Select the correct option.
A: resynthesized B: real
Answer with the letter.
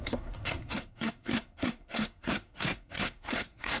A